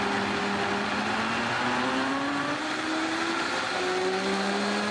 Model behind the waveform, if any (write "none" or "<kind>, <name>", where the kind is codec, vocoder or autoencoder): none